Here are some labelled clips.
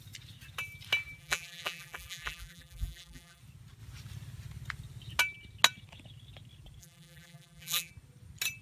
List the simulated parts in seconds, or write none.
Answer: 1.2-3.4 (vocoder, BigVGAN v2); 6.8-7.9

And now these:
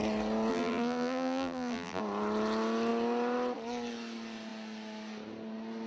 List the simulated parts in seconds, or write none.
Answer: 0.5-2.0 (vocoder, BigVGAN v2)

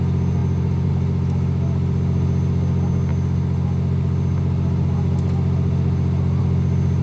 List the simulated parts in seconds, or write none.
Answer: 0.4-0.9 (vocoder, BigVGAN v2)

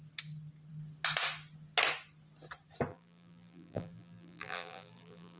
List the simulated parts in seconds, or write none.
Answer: 2.9-5.4 (vocoder, BigVGAN v2)